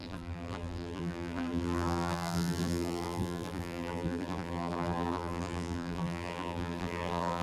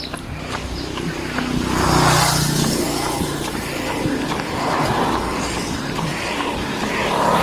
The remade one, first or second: first